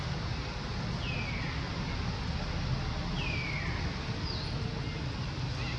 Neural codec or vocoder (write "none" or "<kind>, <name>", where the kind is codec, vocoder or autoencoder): none